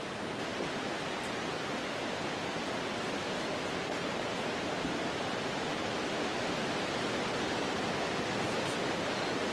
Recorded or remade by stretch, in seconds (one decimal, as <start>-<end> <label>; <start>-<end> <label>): 0.0-0.5 recorded; 0.5-1.2 remade; 1.2-9.5 recorded